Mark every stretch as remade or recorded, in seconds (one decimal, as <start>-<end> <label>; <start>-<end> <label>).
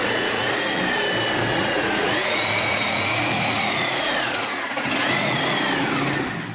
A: 0.0-0.8 remade; 0.8-1.5 recorded; 1.5-5.4 remade; 5.4-6.5 recorded